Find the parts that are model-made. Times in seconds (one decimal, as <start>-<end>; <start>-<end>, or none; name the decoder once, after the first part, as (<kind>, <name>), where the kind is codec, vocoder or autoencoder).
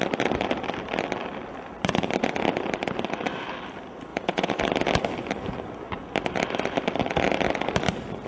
4.1-4.6 (vocoder, Vocos)